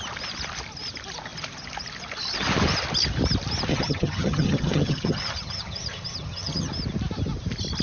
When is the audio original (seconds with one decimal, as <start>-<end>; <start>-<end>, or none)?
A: 0.0-3.7; 6.7-7.8